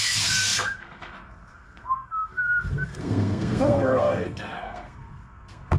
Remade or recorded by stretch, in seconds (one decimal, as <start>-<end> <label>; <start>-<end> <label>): 0.0-5.8 remade